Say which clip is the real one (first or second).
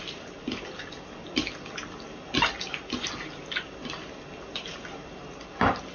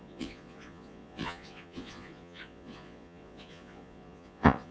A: first